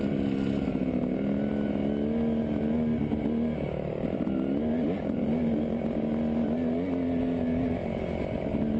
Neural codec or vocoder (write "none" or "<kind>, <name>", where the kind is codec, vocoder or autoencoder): none